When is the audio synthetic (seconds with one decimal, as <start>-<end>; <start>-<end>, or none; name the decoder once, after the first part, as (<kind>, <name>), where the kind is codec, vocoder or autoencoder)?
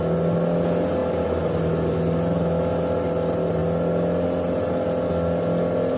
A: none